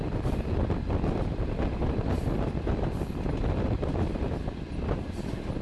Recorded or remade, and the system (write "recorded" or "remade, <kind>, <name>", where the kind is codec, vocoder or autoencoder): recorded